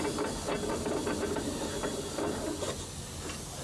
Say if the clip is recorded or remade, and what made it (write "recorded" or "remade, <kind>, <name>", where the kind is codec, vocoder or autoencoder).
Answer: recorded